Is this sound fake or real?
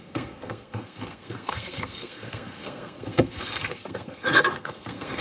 fake